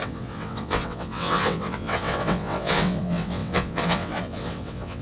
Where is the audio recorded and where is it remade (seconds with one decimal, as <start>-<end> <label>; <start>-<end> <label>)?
0.0-5.0 remade